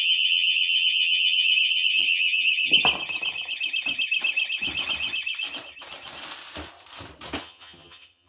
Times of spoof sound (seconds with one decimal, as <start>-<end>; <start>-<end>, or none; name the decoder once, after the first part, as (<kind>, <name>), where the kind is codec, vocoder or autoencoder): 0.0-2.7 (vocoder, HiFi-GAN); 7.4-8.3